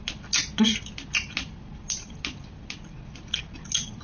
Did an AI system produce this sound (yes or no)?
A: no